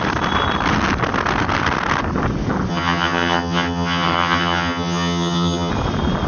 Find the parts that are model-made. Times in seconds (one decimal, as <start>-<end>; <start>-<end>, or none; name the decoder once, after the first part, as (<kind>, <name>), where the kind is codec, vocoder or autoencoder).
2.7-5.7 (vocoder, HiFi-GAN)